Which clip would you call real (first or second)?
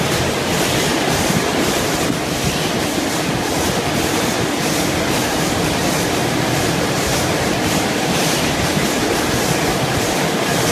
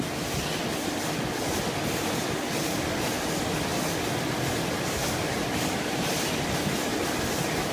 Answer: second